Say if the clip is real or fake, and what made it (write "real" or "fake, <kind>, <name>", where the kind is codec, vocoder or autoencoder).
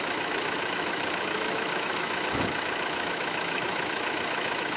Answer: fake, autoencoder, DAC-VAE